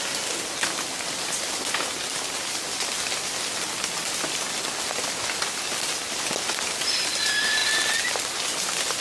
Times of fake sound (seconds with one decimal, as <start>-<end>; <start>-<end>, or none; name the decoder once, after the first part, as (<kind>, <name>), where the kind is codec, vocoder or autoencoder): none